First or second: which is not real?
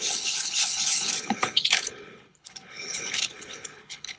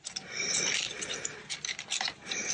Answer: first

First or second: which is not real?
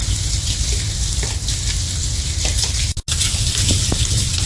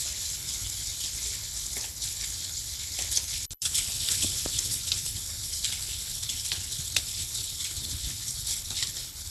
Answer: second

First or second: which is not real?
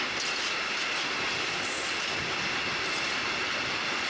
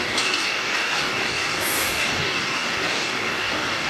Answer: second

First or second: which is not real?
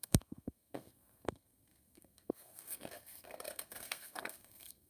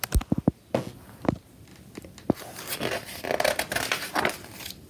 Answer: first